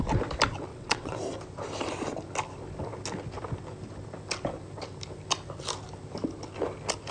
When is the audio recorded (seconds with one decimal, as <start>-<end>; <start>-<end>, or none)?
0.0-0.7; 1.2-7.1